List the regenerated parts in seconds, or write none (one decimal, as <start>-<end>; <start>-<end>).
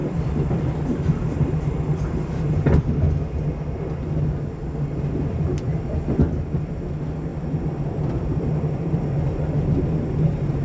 0.0-3.2; 7.3-10.6